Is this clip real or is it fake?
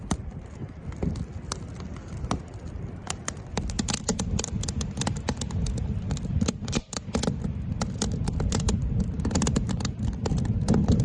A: real